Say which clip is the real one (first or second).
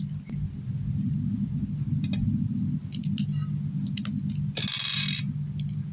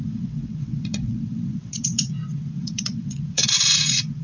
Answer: first